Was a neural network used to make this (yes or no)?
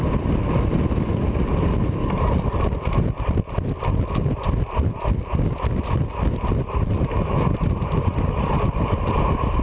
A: no